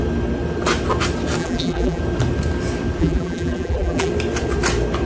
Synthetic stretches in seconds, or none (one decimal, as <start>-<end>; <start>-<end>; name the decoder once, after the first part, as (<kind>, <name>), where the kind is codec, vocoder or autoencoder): 1.4-2.0 (vocoder, BigVGAN v2); 3.0-4.1